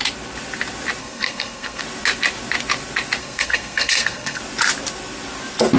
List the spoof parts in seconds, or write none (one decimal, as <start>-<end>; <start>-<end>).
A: 1.0-1.8; 3.2-4.4